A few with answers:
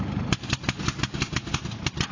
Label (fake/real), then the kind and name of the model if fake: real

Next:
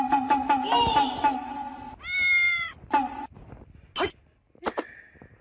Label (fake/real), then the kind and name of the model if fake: real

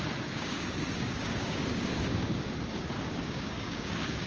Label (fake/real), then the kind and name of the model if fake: fake, codec, DAC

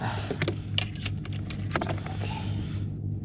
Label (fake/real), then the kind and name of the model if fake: real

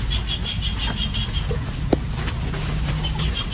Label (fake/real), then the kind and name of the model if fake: real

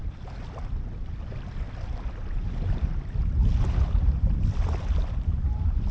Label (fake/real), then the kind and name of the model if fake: real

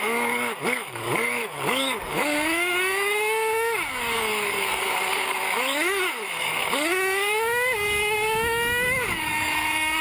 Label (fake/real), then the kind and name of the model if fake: fake, codec, DAC